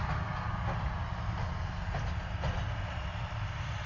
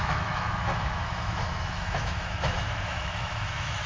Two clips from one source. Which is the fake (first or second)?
second